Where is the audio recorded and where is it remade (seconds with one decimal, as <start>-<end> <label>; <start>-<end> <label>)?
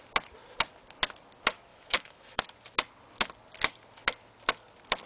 0.0-1.7 recorded; 1.7-2.4 remade; 2.4-5.1 recorded